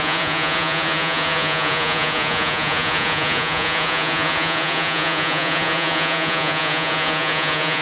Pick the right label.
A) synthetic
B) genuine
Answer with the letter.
A